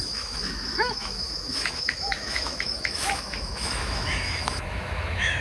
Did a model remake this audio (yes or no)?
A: yes